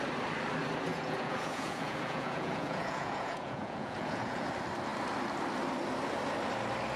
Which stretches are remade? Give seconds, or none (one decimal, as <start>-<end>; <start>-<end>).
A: 0.9-4.5